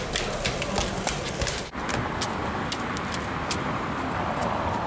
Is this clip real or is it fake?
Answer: real